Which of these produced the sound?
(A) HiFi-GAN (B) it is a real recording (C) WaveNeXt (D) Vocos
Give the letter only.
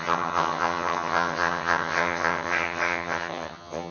A